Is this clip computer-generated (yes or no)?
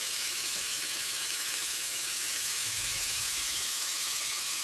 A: yes